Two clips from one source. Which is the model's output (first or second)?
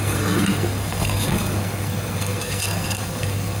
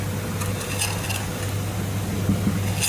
first